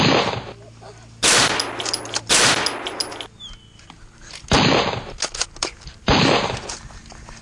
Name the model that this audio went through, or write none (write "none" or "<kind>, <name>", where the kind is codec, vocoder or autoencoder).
none